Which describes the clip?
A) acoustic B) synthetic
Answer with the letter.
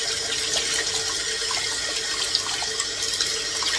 A